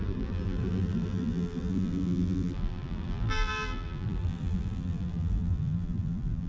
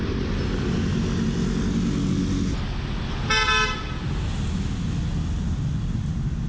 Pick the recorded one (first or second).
second